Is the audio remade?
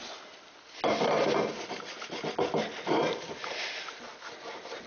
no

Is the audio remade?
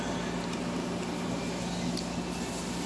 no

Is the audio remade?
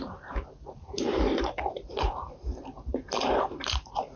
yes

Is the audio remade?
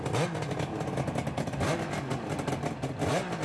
no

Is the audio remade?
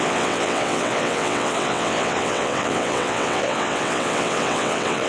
yes